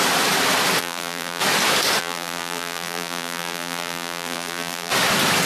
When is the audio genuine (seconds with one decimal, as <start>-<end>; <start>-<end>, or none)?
0.0-0.8; 1.4-2.0; 4.9-5.5